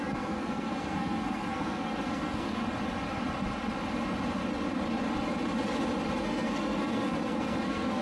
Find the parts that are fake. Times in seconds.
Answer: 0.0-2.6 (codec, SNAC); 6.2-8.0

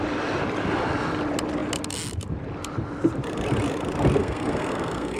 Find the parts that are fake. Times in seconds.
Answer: 4.2-5.2 (codec, SNAC)

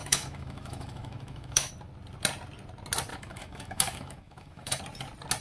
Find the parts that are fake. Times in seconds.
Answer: 0.0-1.7 (autoencoder, DAC-VAE); 3.1-4.8

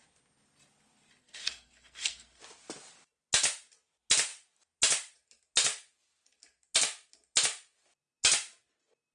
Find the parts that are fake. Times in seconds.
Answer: 1.2-2.4 (codec, SNAC)

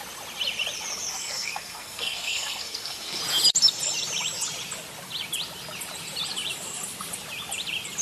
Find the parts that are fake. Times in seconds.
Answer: 1.1-3.2 (codec, SNAC)

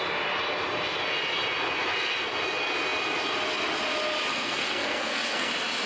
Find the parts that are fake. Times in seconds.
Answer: 4.3-5.5 (codec, SNAC)